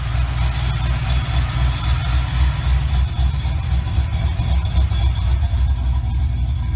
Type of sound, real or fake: real